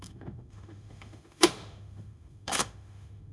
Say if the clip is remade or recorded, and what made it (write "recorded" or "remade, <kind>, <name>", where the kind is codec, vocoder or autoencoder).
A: remade, autoencoder, DAC-VAE